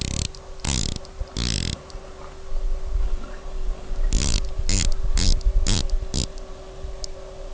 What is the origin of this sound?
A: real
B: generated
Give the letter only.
A